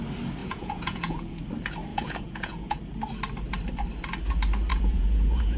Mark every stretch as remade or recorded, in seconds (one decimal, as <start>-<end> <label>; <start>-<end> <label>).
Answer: 0.0-0.4 recorded; 0.4-1.4 remade; 1.4-1.9 recorded; 1.9-2.8 remade; 2.8-4.7 recorded; 4.7-5.6 remade